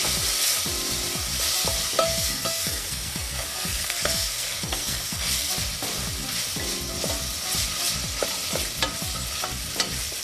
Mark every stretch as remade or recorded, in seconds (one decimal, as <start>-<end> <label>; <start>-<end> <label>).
0.0-1.8 recorded; 1.8-5.5 remade; 5.5-10.2 recorded